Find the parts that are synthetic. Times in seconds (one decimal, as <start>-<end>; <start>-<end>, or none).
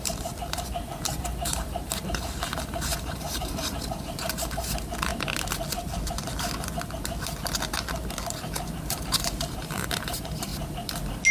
0.0-5.1; 8.8-10.5